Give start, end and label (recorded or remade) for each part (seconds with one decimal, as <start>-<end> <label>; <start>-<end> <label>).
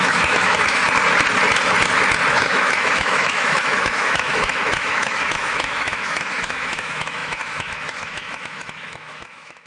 0.0-0.8 remade; 0.8-2.3 recorded; 2.3-9.7 remade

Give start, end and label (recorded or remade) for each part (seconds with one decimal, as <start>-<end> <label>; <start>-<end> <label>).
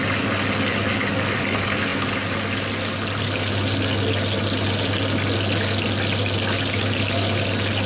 0.0-7.9 recorded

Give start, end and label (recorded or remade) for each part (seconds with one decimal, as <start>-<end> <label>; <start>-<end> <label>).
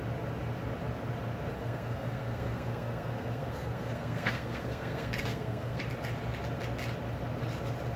0.0-1.5 recorded; 1.5-5.8 remade; 5.8-8.0 recorded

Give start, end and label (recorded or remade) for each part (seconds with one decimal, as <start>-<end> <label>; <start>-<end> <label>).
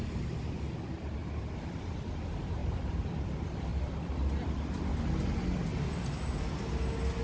0.0-1.2 recorded; 1.2-2.1 remade; 2.1-2.6 recorded; 2.6-3.2 remade; 3.2-3.7 recorded; 3.7-4.3 remade; 4.3-5.7 recorded; 5.7-6.2 remade; 6.2-7.2 recorded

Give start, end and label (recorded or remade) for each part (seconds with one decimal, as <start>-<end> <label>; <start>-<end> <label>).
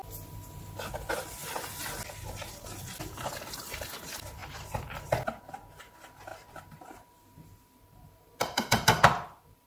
0.0-4.4 recorded; 4.4-5.0 remade; 5.0-6.3 recorded; 6.3-9.7 remade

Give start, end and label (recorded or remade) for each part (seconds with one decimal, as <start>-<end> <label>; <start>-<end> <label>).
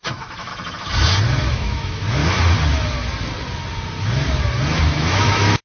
0.0-0.5 remade; 0.5-1.5 recorded; 1.5-2.2 remade; 2.2-4.8 recorded; 4.8-5.6 remade